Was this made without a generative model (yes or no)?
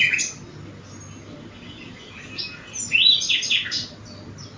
yes